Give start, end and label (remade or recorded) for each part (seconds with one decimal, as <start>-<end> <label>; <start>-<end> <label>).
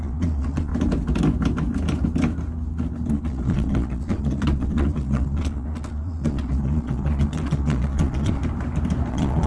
0.0-0.7 remade; 0.7-3.1 recorded; 3.1-8.4 remade; 8.4-9.1 recorded; 9.1-9.5 remade